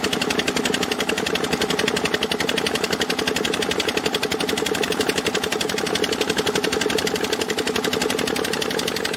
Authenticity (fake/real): real